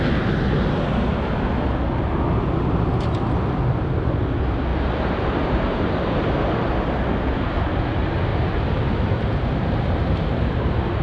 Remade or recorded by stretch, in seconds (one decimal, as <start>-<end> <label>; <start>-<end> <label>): 0.0-4.7 recorded; 4.7-6.0 remade; 6.0-8.3 recorded; 8.3-11.0 remade